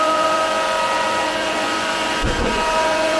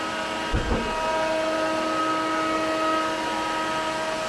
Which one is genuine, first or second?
second